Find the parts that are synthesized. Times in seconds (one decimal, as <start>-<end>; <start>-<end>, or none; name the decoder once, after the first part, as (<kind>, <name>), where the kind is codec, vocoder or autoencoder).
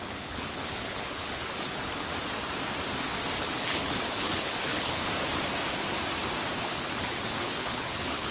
0.0-2.1 (codec, HILCodec); 3.4-5.0; 6.6-8.3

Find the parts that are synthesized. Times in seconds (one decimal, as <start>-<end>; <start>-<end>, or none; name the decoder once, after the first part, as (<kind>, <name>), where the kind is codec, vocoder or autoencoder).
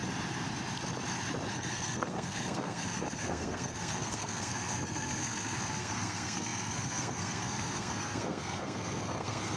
1.5-9.6 (codec, SNAC)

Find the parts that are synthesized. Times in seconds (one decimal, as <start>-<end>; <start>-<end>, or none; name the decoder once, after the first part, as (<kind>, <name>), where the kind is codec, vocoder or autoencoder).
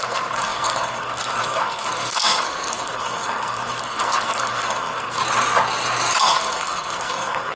0.0-5.2 (codec, SNAC); 6.2-7.6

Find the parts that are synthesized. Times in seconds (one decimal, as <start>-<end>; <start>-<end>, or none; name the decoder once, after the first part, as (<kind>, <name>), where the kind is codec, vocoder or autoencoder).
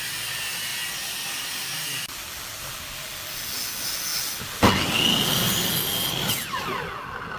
none